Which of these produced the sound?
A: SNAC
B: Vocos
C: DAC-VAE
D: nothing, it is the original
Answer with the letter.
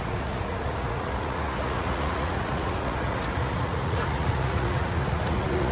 B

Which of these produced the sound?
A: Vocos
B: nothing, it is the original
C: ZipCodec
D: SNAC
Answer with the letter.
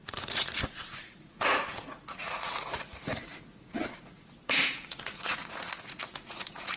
A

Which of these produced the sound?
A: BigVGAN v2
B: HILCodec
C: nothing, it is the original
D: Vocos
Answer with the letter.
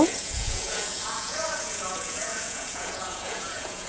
D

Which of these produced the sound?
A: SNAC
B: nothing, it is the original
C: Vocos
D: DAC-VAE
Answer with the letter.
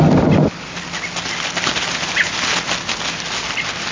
B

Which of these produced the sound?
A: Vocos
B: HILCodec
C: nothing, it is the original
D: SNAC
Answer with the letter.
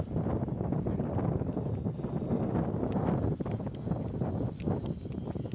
C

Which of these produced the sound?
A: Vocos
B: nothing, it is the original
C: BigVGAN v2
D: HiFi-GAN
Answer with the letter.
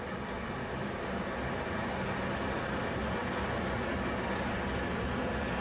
B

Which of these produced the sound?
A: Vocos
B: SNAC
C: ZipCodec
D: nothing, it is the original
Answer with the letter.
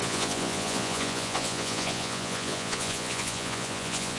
A